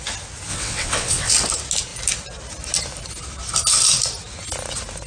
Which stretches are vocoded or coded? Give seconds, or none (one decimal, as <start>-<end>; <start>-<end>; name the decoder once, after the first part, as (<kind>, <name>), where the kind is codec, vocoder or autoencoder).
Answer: 0.5-1.3 (vocoder, WaveNeXt)